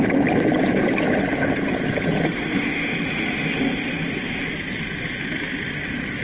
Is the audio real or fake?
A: real